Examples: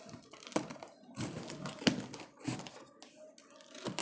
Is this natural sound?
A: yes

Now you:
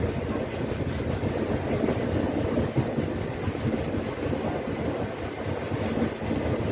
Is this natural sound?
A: yes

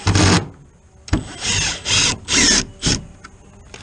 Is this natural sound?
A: yes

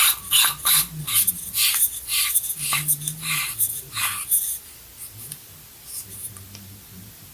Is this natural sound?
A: yes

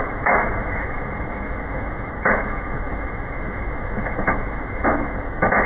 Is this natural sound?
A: no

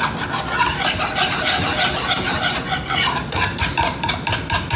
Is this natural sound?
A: yes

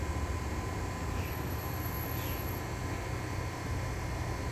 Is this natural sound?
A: yes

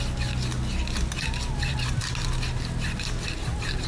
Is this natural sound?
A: yes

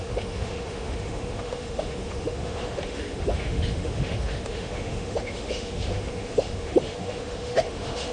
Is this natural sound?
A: no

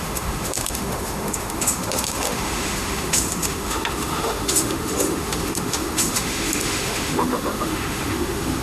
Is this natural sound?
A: no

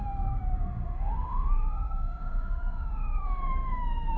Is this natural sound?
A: no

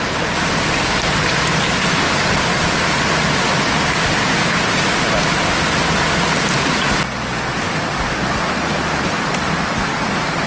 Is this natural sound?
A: yes